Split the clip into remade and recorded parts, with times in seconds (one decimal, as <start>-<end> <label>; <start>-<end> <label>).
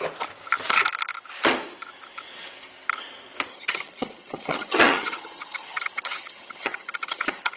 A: 0.0-3.5 recorded; 3.5-7.6 remade